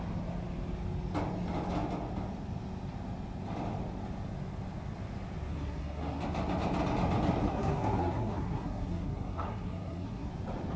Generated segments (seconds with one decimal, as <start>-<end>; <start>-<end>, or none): 5.5-6.2; 7.5-10.3